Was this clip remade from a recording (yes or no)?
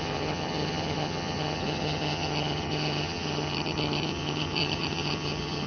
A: yes